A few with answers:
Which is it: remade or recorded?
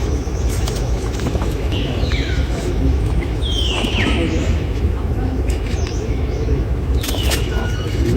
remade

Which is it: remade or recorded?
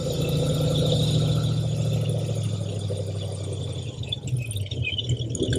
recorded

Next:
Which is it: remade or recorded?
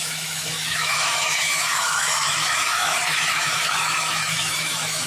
remade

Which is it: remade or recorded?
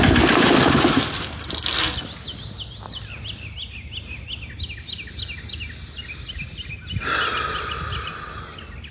recorded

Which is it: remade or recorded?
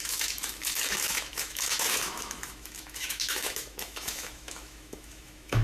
remade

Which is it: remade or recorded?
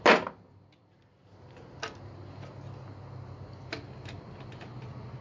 recorded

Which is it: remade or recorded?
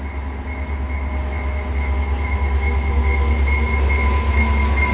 recorded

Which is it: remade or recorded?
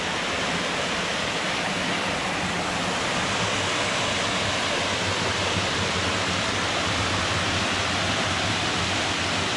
recorded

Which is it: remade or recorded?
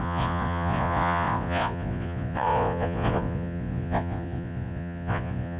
remade